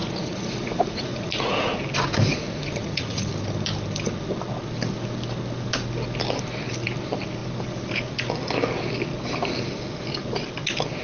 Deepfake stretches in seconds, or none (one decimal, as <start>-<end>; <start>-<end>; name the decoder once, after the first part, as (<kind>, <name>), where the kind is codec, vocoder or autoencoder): 0.0-1.5 (vocoder, Vocos); 2.3-3.3